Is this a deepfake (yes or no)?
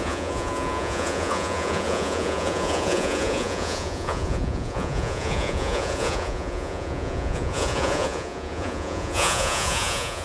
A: yes